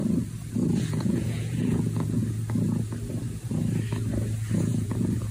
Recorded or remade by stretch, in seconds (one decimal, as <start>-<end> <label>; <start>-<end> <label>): 0.0-0.8 recorded; 0.8-2.2 remade; 2.2-4.6 recorded; 4.6-5.3 remade